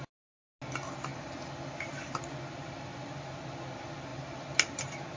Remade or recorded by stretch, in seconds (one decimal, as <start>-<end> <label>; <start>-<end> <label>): 0.0-5.2 recorded